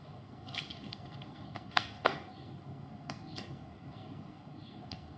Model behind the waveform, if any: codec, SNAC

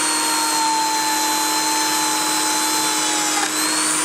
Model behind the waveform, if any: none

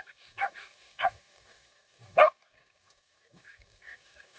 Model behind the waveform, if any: codec, DAC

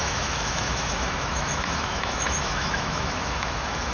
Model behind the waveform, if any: autoencoder, DAC-VAE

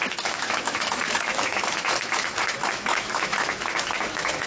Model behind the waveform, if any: autoencoder, DAC-VAE